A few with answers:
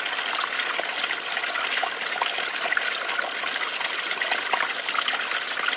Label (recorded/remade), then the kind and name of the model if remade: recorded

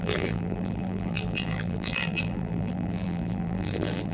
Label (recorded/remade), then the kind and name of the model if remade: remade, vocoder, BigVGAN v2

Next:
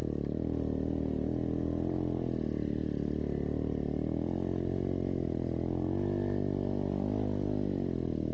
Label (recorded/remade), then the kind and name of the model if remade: remade, vocoder, BigVGAN v2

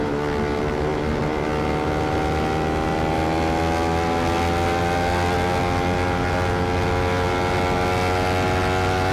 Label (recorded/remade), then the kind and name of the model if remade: recorded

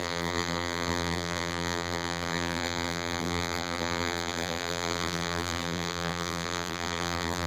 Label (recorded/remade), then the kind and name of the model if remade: remade, vocoder, BigVGAN v2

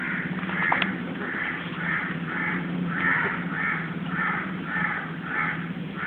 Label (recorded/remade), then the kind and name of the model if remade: remade, vocoder, BigVGAN v2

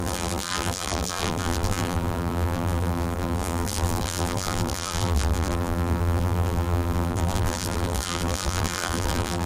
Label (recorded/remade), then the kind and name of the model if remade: remade, vocoder, BigVGAN v2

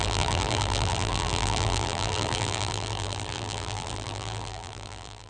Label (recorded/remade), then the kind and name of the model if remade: remade, vocoder, BigVGAN v2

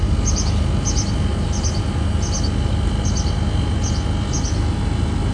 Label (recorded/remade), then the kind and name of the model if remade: recorded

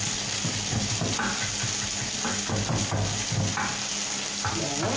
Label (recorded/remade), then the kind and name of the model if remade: recorded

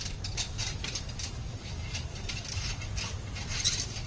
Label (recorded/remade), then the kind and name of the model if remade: recorded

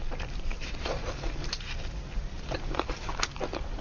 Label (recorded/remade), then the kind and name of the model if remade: remade, vocoder, BigVGAN v2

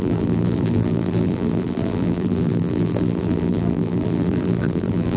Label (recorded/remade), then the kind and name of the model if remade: remade, vocoder, BigVGAN v2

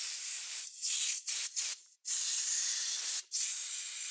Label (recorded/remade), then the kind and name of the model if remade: remade, vocoder, BigVGAN v2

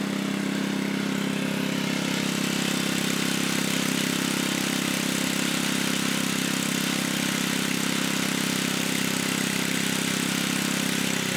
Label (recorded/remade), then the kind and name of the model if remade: recorded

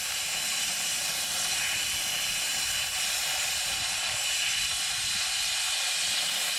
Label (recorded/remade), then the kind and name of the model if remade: recorded